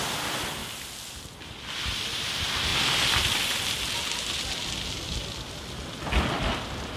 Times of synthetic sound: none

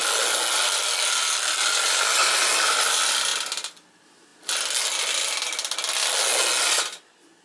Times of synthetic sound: none

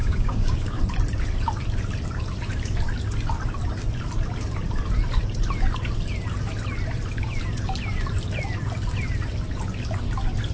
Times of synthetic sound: 0.0-0.8 (codec, DAC)

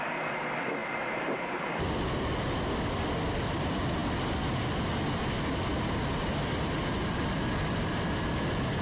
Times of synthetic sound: 0.8-1.8 (vocoder, BigVGAN v2)

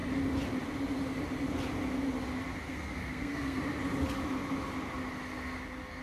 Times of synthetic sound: 2.7-3.6 (codec, SNAC)

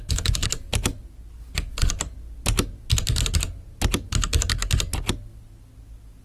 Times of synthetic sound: none

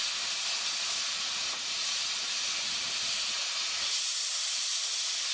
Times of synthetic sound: none